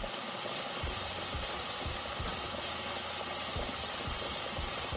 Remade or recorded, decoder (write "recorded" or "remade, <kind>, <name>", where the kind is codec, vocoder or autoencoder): remade, vocoder, BigVGAN v2